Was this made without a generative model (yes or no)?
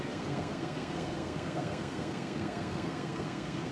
no